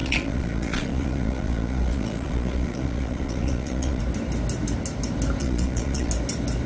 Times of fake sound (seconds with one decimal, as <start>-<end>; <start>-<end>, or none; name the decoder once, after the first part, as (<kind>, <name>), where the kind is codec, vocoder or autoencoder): 0.0-4.0 (vocoder, Vocos); 5.4-6.1